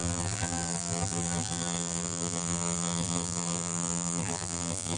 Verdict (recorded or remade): remade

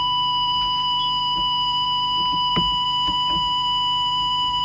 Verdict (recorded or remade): remade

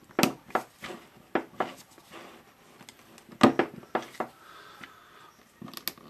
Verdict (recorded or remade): recorded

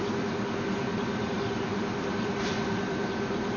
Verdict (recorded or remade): remade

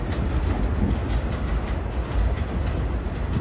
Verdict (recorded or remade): recorded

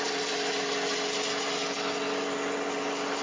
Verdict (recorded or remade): recorded